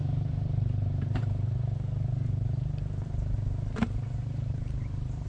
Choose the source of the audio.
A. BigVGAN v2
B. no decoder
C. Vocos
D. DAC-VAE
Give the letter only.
A